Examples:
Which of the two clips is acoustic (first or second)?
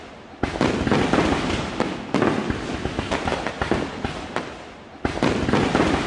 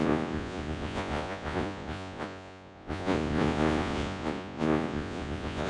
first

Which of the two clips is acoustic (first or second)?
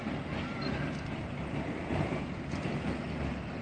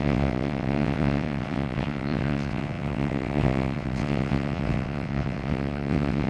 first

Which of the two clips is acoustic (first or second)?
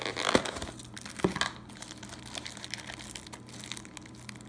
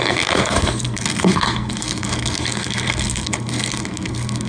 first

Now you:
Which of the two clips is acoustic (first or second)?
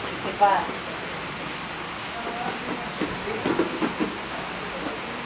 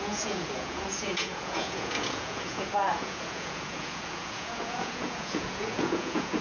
first